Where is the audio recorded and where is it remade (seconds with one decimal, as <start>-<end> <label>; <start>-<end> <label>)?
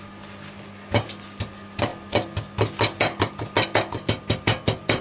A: 0.0-5.0 recorded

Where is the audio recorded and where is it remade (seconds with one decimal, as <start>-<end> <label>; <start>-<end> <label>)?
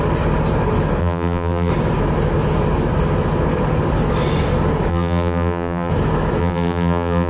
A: 0.0-1.0 recorded; 1.0-1.7 remade; 1.7-4.9 recorded; 4.9-5.9 remade; 5.9-6.4 recorded; 6.4-7.3 remade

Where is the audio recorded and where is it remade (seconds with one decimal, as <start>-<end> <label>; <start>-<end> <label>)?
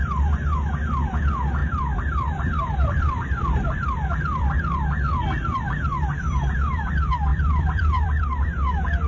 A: 0.0-1.6 recorded; 1.6-6.5 remade; 6.5-7.3 recorded; 7.3-8.2 remade; 8.2-9.1 recorded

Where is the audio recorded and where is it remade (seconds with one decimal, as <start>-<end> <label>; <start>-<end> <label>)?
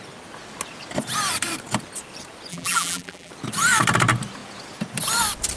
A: 0.0-2.5 recorded; 2.5-3.3 remade; 3.3-5.6 recorded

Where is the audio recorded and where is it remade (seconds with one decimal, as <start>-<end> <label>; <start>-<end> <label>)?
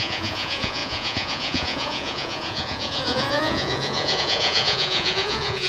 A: 0.0-5.7 remade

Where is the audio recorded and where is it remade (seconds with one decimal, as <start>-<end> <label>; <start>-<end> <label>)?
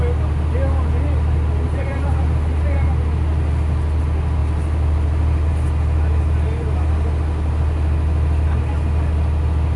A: 0.0-9.8 recorded